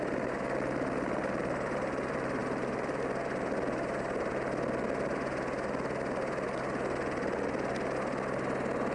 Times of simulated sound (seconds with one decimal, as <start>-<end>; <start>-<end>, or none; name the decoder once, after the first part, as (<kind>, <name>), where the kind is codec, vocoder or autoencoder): none